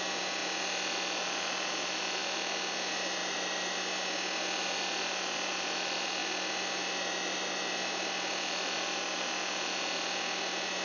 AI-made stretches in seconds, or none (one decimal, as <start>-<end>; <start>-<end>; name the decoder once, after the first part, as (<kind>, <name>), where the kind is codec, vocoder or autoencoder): none

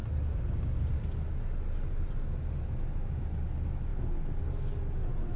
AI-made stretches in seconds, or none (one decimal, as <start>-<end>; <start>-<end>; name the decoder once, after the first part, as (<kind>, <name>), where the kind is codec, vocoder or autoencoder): none

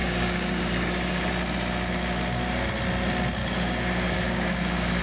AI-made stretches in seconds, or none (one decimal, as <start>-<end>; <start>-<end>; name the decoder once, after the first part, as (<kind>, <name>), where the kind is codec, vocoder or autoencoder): 0.0-1.3 (codec, DAC); 3.4-5.0

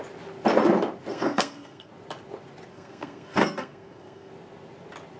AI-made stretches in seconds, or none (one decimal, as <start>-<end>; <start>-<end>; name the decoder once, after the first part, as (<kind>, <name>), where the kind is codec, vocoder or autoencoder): 1.1-1.9 (codec, SNAC); 2.7-4.3

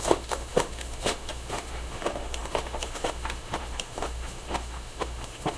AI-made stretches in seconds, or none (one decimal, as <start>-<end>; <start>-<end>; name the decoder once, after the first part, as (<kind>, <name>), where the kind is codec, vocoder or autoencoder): 0.0-5.6 (autoencoder, DAC-VAE)

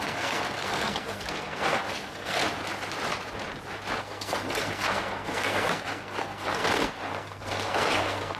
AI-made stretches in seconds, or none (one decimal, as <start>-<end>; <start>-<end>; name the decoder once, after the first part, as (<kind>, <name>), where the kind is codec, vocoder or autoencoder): 0.0-2.4 (codec, SNAC); 4.0-8.4

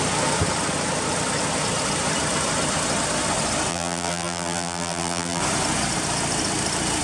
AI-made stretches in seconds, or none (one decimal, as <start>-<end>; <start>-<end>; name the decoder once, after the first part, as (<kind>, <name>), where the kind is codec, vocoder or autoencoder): 3.7-5.4 (vocoder, BigVGAN v2)

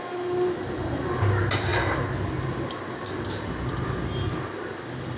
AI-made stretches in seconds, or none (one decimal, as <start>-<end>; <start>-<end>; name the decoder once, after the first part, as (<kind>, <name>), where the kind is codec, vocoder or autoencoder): none